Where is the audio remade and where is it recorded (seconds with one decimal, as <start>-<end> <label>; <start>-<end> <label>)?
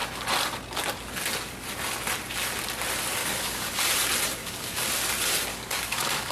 0.0-3.2 recorded; 3.2-3.7 remade; 3.7-4.4 recorded; 4.4-4.9 remade; 4.9-5.5 recorded; 5.5-6.3 remade